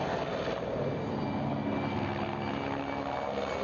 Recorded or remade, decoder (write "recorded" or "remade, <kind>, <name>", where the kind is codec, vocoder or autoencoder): recorded